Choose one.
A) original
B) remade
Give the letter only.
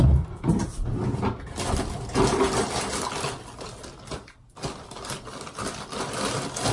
A